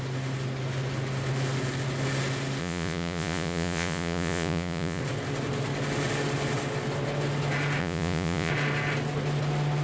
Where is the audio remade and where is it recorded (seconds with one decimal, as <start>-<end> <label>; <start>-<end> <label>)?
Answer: 0.0-2.6 recorded; 2.6-5.0 remade; 5.0-7.8 recorded; 7.8-8.5 remade; 8.5-9.8 recorded